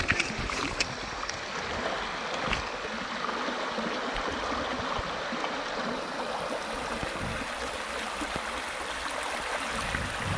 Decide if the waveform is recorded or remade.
recorded